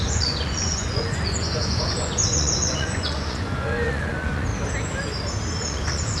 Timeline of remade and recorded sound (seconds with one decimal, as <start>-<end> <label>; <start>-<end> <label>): 0.0-4.5 remade; 4.5-5.6 recorded; 5.6-6.2 remade